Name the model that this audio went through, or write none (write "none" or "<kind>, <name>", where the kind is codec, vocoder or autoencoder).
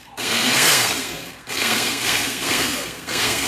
codec, SNAC